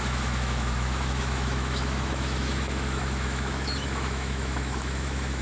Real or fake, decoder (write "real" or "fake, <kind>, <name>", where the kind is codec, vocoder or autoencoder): fake, autoencoder, DAC-VAE